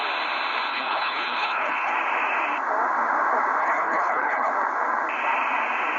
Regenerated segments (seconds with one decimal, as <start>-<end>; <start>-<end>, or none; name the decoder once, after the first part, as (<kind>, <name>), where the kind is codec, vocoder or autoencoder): 0.7-1.9 (codec, HILCodec); 3.6-4.5